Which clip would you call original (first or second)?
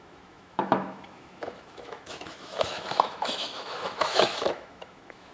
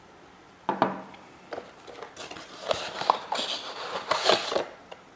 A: second